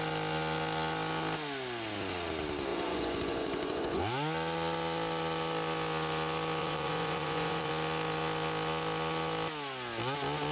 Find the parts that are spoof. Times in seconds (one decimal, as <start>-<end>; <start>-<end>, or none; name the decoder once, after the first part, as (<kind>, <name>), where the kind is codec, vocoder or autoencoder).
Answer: 2.7-4.0 (vocoder, Vocos); 6.6-7.7